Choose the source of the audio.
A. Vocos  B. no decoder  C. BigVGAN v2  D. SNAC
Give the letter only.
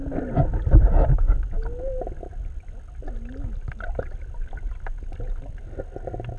B